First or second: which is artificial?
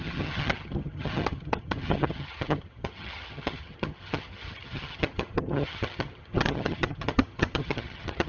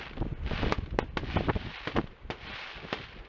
first